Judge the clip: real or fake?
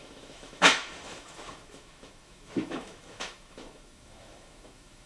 fake